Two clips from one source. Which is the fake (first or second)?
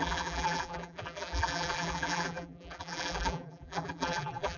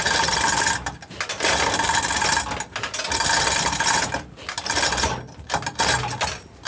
first